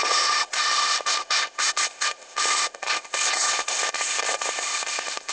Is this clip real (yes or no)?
no